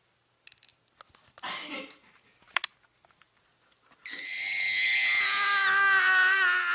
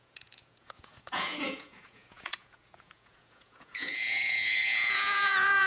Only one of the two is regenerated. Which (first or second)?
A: second